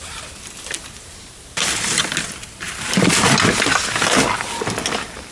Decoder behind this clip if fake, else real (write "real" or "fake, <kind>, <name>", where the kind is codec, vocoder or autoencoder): real